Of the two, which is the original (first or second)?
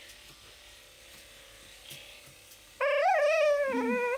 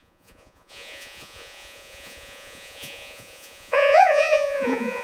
first